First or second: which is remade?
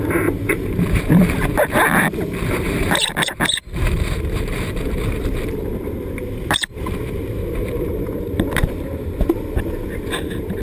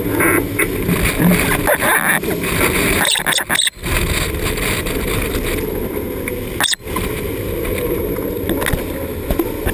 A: first